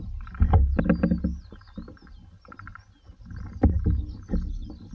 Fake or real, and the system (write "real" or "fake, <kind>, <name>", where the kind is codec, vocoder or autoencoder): real